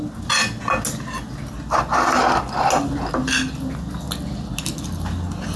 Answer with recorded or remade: recorded